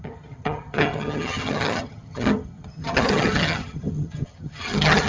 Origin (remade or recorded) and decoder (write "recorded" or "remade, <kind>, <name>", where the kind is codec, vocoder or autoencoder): remade, vocoder, HiFi-GAN